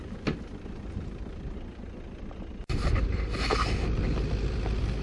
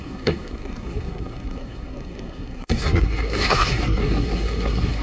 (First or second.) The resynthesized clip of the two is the second